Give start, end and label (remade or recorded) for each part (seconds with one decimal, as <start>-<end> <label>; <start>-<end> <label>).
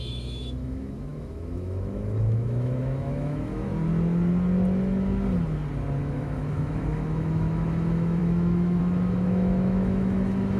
0.0-3.7 remade; 3.7-6.0 recorded; 6.0-10.6 remade